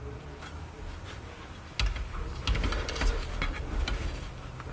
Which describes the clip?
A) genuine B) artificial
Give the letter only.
A